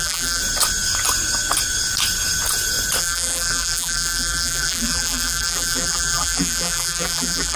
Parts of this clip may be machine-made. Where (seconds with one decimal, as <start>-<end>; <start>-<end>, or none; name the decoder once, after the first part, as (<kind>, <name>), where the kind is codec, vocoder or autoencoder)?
0.0-0.4 (vocoder, BigVGAN v2); 3.0-7.6